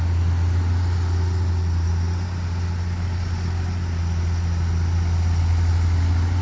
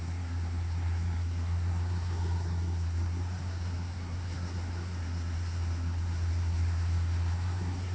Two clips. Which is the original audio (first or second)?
first